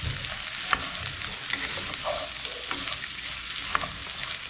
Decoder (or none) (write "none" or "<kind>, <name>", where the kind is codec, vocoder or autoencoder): none